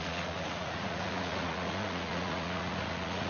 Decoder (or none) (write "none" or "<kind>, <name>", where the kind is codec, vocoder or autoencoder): vocoder, Vocos